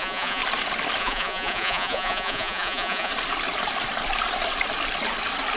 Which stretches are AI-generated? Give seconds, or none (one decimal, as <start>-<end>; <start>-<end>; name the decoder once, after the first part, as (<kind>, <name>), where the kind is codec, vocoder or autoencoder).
0.0-0.4 (vocoder, Vocos); 1.0-3.1